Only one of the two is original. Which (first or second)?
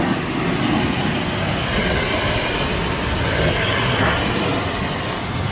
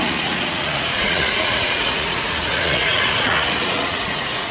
first